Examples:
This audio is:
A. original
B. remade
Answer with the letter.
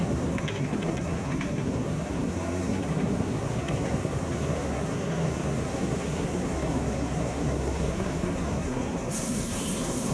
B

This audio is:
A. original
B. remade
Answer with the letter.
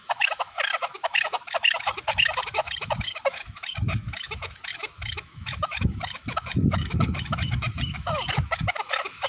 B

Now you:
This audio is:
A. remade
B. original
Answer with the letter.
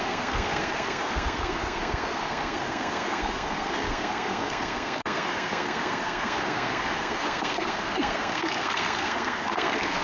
A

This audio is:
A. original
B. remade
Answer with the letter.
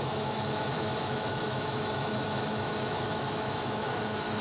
B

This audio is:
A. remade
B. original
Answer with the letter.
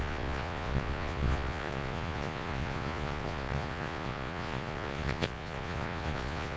A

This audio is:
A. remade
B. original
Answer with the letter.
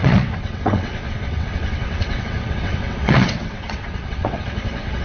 A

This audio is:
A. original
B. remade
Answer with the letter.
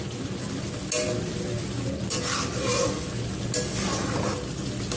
A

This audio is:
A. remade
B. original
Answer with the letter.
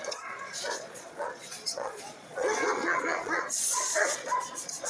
A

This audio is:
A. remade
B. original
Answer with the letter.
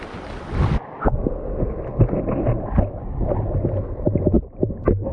B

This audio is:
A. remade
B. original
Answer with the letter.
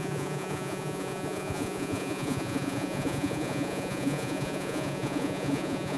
A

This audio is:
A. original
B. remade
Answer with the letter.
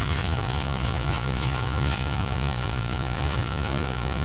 B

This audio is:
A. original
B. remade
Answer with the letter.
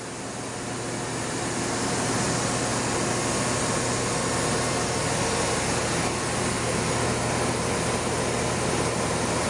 A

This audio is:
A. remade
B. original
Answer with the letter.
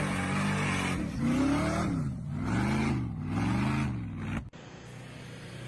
B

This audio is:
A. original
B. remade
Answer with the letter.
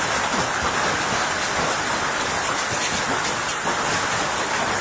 A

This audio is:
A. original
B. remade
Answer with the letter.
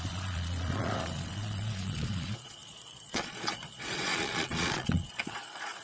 B